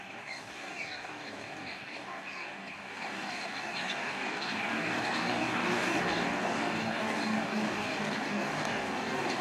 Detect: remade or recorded remade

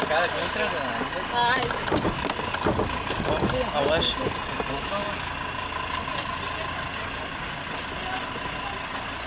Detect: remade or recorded recorded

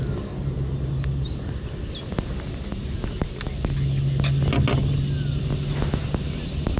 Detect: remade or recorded recorded